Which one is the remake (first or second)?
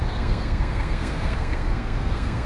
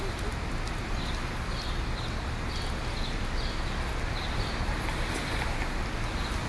first